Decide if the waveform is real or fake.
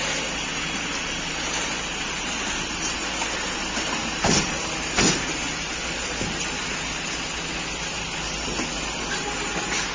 real